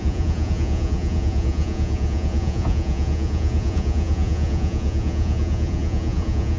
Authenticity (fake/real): fake